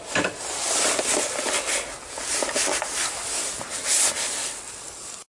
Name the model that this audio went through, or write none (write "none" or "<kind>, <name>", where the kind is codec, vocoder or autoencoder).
none